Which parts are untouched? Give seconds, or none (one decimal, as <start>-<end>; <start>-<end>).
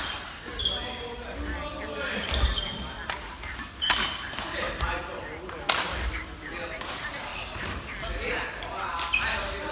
0.0-9.7